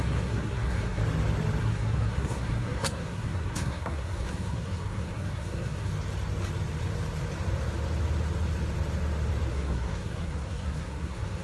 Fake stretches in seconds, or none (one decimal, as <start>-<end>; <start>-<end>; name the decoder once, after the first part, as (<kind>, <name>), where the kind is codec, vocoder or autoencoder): 0.0-1.0 (codec, SNAC); 1.6-5.9; 9.5-11.4